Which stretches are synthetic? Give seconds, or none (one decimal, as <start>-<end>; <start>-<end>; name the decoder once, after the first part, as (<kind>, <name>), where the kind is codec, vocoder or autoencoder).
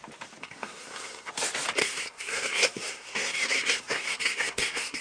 0.4-1.3 (codec, SNAC); 1.8-5.0